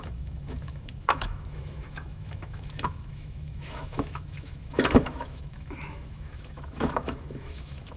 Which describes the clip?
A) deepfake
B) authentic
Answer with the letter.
A